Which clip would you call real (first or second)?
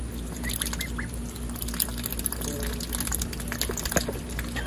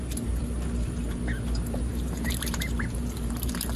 first